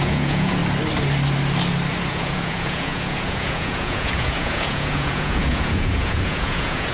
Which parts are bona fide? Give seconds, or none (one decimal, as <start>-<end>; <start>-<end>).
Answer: 0.6-2.1